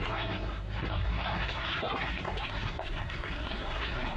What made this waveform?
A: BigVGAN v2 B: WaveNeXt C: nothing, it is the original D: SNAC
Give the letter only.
D